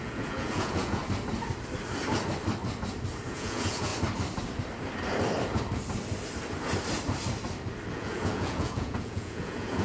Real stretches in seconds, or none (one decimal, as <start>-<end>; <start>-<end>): 1.0-3.3; 3.9-7.9

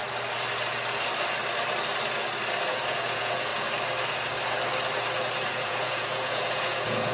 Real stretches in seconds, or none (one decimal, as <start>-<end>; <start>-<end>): 0.0-2.7; 3.5-5.5

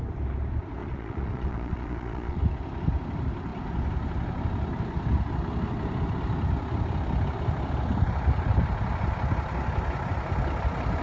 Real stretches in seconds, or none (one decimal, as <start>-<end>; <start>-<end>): 0.0-0.8; 2.4-11.0

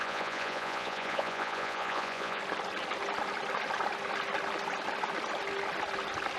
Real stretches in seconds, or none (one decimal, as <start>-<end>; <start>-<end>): 2.4-6.4

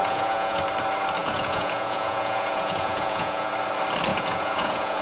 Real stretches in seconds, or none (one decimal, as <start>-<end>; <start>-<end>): 0.6-1.2; 3.5-4.1

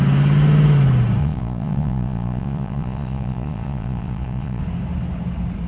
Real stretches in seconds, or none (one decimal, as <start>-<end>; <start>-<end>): 0.0-1.2; 4.6-5.7